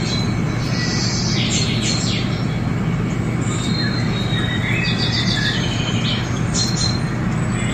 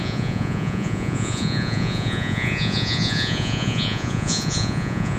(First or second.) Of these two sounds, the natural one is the first